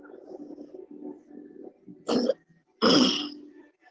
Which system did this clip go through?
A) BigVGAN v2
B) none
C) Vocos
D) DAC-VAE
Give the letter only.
B